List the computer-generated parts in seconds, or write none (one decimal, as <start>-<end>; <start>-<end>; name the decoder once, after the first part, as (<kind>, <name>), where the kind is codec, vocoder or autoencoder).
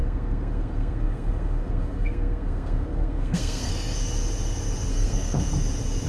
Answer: 0.0-3.7 (codec, SNAC); 4.9-5.5